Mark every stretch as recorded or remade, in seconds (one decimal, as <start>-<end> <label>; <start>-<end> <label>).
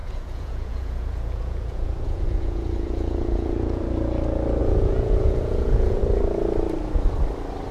0.0-3.8 remade; 3.8-4.6 recorded; 4.6-6.0 remade; 6.0-7.7 recorded